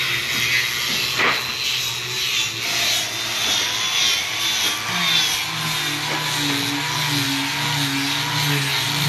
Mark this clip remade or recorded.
recorded